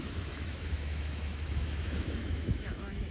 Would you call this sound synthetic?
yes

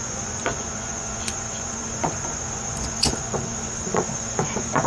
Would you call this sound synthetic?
yes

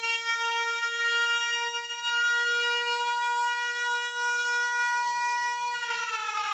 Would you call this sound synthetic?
yes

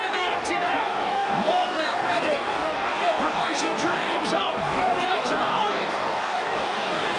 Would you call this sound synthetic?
yes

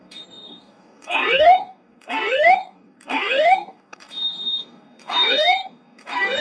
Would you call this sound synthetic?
yes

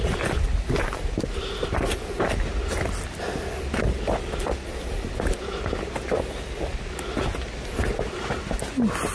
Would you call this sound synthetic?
no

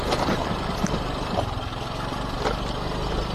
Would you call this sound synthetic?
no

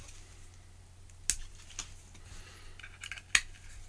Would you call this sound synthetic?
no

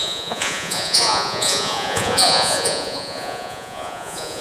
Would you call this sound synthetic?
yes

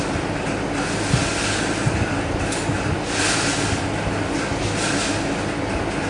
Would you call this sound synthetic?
no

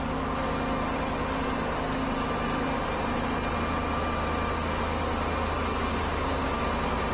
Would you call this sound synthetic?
no